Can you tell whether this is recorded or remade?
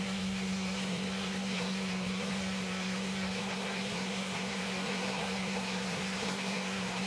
remade